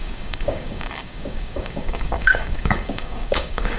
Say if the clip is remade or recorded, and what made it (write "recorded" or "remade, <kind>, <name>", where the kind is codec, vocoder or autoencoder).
remade, codec, DAC